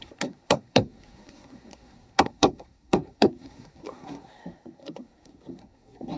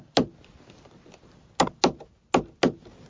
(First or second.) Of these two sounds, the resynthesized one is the first